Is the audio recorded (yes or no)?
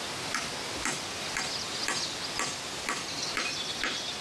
yes